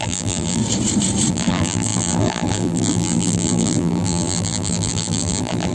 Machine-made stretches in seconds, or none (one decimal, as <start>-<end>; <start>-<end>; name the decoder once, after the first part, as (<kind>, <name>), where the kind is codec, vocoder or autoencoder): 0.0-0.6 (vocoder, BigVGAN v2); 1.3-5.7